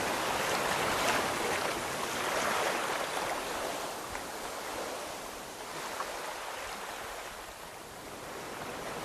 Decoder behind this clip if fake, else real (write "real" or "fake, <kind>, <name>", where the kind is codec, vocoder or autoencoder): real